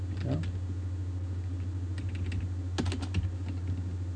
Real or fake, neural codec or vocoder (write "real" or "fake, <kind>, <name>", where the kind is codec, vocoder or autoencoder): real